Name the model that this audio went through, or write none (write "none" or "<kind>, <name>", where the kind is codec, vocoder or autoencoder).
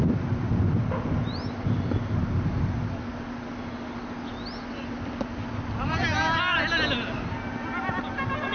none